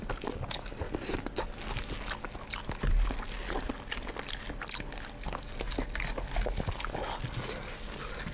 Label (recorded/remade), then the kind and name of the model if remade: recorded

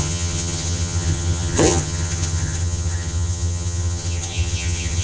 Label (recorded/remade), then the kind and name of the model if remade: remade, vocoder, HiFi-GAN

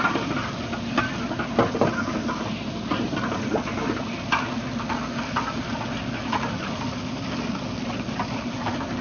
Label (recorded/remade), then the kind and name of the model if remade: recorded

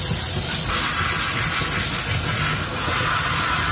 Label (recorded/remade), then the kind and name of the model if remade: recorded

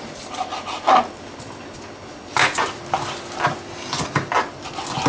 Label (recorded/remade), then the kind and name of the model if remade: recorded